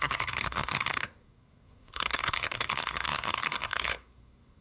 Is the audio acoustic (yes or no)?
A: no